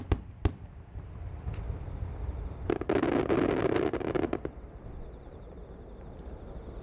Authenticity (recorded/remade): recorded